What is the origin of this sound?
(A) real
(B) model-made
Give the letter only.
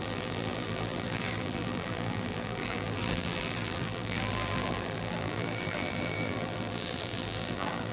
B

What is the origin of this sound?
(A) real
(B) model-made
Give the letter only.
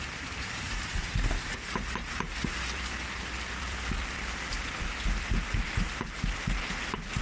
B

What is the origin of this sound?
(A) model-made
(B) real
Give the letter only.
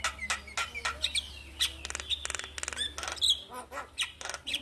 B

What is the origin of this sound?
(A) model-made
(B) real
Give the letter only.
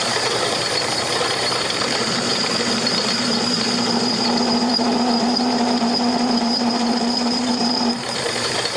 A